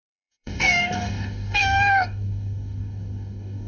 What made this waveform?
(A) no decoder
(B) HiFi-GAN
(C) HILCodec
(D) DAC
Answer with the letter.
D